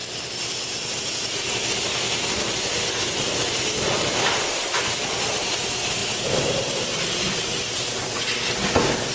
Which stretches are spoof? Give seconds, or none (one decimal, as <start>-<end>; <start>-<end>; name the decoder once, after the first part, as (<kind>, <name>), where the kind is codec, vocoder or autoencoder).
none